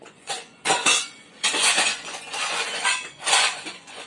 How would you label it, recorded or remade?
remade